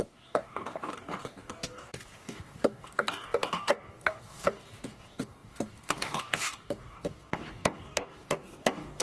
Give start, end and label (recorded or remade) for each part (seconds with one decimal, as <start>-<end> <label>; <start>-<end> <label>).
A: 0.0-9.0 remade